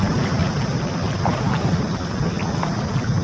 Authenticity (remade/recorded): recorded